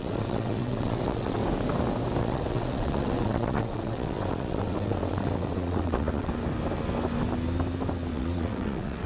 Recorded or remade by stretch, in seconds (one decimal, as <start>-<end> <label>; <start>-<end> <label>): 0.0-1.4 remade; 1.4-2.2 recorded; 2.2-6.3 remade; 6.3-8.1 recorded; 8.1-9.1 remade

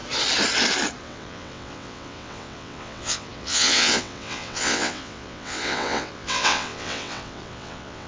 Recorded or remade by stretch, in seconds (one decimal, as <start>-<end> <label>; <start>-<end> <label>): 0.0-1.0 recorded; 1.0-8.1 remade

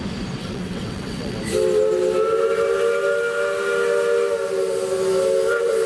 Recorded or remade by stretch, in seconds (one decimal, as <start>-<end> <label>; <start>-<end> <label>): 0.0-0.4 recorded; 0.4-1.4 remade; 1.4-5.9 recorded

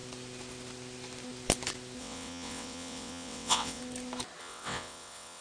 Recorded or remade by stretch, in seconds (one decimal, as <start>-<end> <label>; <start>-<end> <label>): 0.0-2.0 recorded; 2.0-3.8 remade; 3.8-4.4 recorded; 4.4-5.4 remade

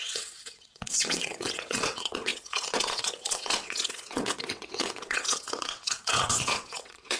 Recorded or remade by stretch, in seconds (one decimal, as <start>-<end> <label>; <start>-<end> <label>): 0.0-7.2 remade